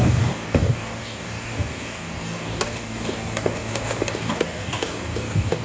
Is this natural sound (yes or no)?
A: no